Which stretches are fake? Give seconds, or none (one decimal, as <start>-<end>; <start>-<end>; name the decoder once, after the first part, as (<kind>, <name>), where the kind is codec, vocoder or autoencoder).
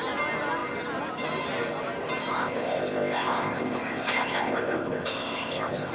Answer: 2.3-5.9 (codec, ZipCodec)